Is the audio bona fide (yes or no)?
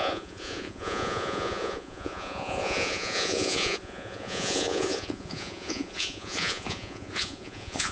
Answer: no